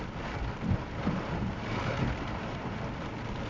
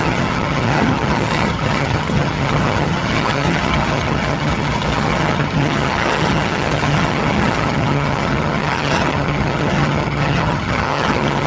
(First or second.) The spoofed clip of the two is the second